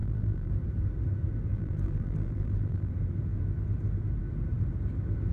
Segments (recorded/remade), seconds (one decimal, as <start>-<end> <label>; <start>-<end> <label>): 0.0-0.5 remade; 0.5-1.5 recorded; 1.5-2.9 remade; 2.9-5.3 recorded